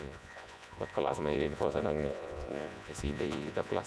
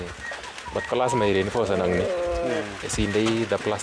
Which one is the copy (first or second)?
first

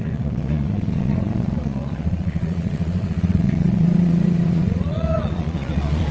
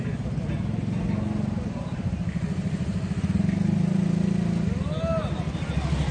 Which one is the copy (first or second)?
first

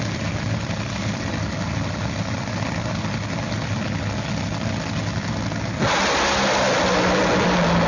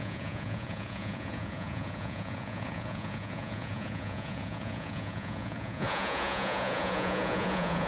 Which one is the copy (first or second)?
second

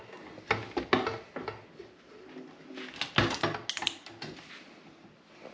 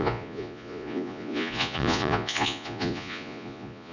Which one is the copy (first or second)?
second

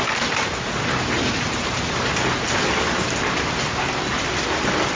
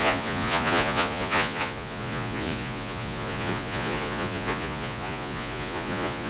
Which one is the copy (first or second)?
second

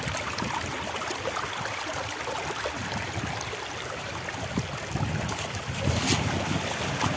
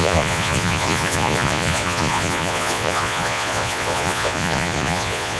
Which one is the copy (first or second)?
second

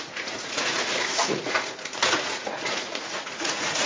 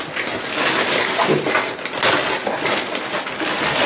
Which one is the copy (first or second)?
first